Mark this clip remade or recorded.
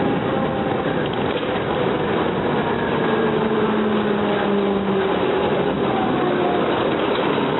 recorded